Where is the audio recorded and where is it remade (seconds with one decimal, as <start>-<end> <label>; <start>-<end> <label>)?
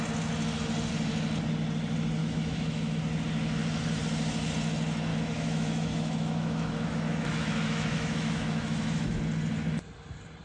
0.0-2.2 recorded; 2.2-3.0 remade; 3.0-5.1 recorded; 5.1-9.2 remade; 9.2-10.4 recorded